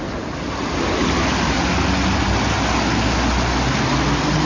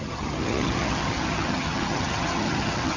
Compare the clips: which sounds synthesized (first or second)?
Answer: second